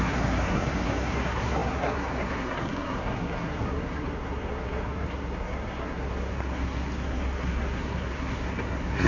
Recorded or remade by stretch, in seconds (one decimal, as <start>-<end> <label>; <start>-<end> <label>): 0.0-9.1 remade